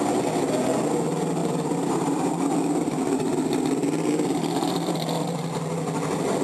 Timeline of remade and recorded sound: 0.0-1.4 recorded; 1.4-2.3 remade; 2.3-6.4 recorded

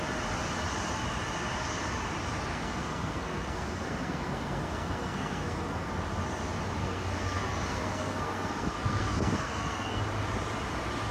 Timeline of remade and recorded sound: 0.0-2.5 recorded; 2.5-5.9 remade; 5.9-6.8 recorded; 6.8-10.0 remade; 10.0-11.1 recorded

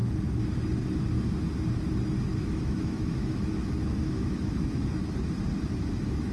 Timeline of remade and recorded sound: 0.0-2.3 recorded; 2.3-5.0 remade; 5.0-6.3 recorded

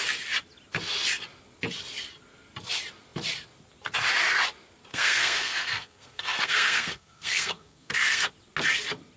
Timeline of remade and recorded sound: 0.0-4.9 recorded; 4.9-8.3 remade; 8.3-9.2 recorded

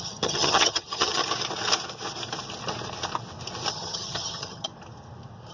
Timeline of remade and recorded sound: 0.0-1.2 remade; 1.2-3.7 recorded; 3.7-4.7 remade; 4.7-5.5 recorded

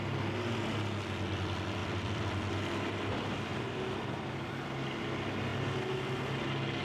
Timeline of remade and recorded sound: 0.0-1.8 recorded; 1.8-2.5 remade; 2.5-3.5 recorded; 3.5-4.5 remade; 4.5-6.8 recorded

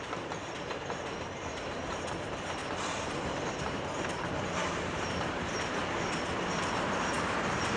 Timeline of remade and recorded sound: 0.0-2.6 remade; 2.6-3.5 recorded; 3.5-5.8 remade; 5.8-6.6 recorded; 6.6-7.8 remade